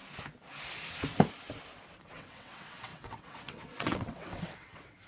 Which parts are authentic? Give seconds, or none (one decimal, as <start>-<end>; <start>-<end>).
0.0-2.0